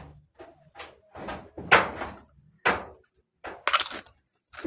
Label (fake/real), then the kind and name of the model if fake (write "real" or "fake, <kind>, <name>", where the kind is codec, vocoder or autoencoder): real